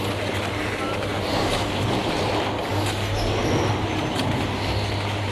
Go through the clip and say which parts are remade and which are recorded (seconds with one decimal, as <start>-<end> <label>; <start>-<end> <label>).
0.0-1.1 recorded; 1.1-2.3 remade; 2.3-5.3 recorded